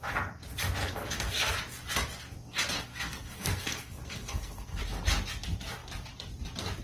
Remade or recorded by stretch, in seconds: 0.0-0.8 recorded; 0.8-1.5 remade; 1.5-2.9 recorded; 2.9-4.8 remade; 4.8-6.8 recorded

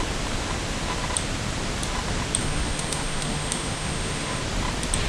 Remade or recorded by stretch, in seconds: 0.0-2.4 recorded; 2.4-4.4 remade; 4.4-5.1 recorded